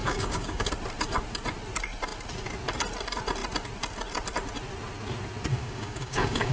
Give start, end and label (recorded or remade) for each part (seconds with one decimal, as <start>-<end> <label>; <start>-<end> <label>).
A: 0.0-0.7 remade; 0.7-5.5 recorded; 5.5-6.5 remade